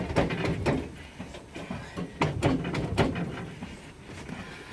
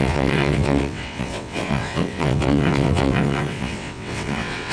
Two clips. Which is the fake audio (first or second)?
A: second